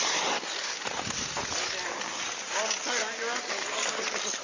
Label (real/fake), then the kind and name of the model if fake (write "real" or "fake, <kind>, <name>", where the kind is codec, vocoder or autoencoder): real